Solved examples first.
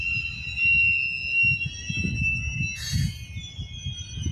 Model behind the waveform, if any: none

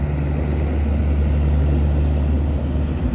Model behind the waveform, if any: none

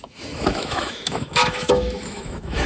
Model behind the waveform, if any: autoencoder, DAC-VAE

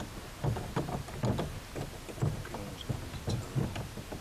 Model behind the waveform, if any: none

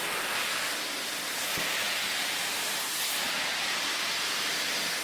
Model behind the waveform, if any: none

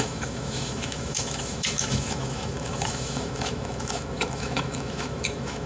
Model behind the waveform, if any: autoencoder, DAC-VAE